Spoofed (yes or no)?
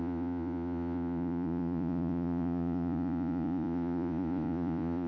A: yes